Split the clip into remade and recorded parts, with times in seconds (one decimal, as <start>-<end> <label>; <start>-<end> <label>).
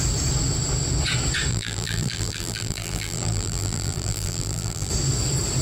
0.0-1.5 recorded; 1.5-4.9 remade; 4.9-5.6 recorded